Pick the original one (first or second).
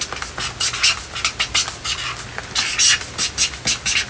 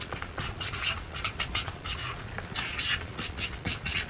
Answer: first